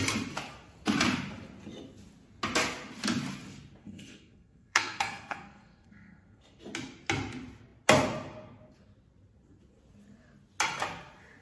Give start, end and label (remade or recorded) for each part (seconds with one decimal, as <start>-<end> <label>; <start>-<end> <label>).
0.0-3.8 recorded; 3.8-6.6 remade; 6.6-11.4 recorded